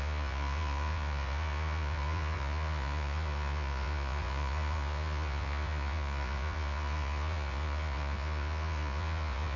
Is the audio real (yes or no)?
no